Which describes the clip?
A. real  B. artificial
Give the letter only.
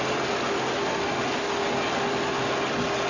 A